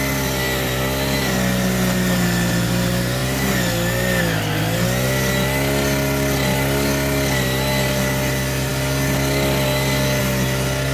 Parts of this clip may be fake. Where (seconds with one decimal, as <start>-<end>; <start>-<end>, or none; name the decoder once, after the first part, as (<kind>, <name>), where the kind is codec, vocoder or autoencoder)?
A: none